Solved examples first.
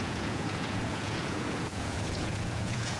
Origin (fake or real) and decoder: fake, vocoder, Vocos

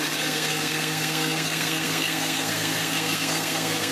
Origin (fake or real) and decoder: fake, codec, SNAC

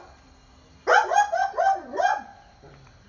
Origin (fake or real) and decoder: real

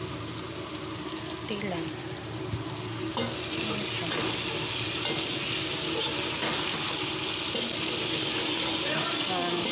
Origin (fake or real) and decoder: real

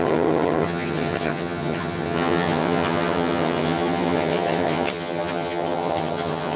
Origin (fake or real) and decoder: fake, vocoder, HiFi-GAN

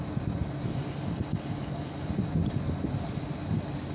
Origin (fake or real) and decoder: real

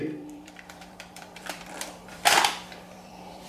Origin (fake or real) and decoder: fake, vocoder, BigVGAN v2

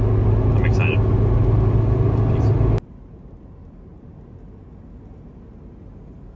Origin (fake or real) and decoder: real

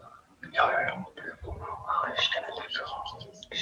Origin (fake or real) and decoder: real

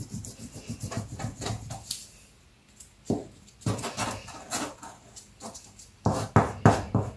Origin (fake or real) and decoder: real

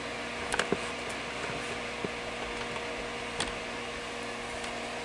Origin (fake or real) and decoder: real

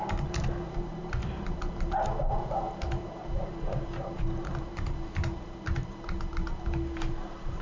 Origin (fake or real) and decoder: fake, vocoder, BigVGAN v2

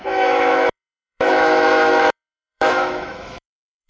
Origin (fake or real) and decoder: fake, autoencoder, DAC-VAE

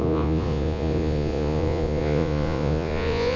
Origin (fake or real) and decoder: fake, vocoder, Vocos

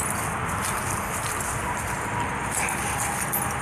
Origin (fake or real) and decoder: real